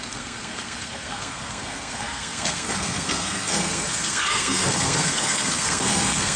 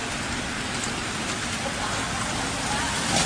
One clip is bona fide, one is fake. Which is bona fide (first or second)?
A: second